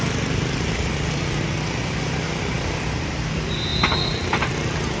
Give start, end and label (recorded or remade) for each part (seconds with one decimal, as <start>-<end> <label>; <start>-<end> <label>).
0.0-5.0 recorded